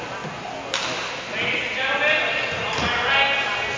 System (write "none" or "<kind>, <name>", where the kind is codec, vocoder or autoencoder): none